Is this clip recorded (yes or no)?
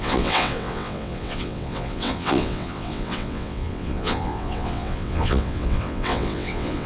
no